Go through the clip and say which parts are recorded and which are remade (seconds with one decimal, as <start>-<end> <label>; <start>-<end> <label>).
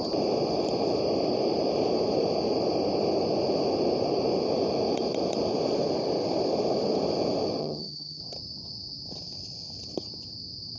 0.0-7.6 recorded; 7.6-8.2 remade; 8.2-10.8 recorded